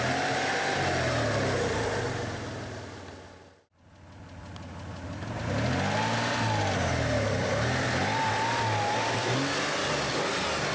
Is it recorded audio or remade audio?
recorded